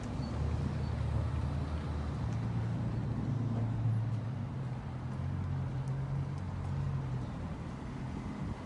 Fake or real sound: real